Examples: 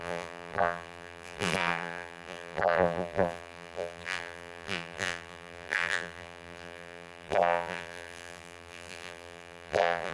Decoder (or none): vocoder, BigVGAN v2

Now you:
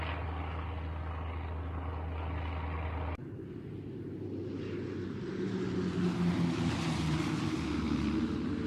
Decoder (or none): none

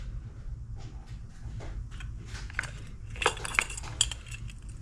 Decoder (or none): none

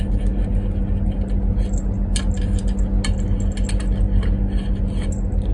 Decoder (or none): none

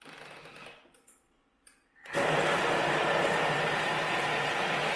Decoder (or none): none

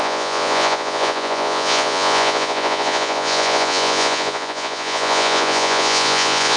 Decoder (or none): vocoder, Vocos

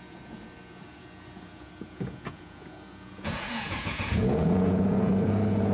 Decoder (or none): vocoder, Vocos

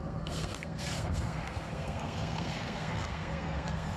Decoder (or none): codec, SNAC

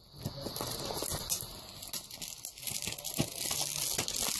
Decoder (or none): none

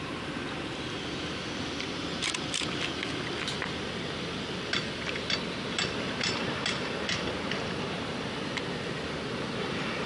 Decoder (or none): none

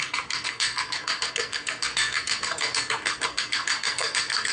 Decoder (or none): codec, SNAC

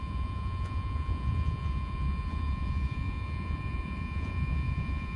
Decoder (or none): vocoder, Vocos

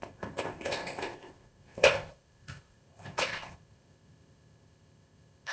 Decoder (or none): codec, ZipCodec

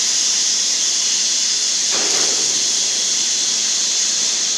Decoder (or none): none